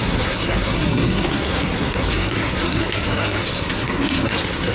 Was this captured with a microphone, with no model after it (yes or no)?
no